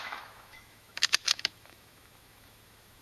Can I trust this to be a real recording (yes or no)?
no